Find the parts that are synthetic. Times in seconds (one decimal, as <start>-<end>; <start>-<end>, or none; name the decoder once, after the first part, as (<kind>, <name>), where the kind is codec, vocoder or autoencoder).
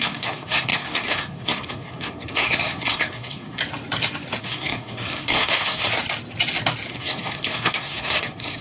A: 0.0-3.6 (codec, SNAC); 4.4-5.9; 6.9-8.6